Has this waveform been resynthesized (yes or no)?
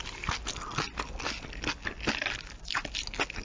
no